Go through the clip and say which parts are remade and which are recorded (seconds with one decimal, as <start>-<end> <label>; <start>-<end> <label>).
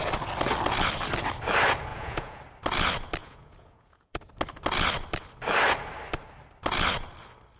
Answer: 0.0-1.9 recorded; 1.9-2.4 remade; 2.4-3.2 recorded; 3.2-4.2 remade; 4.2-7.6 recorded